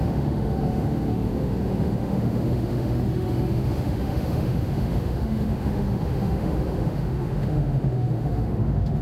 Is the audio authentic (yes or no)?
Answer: no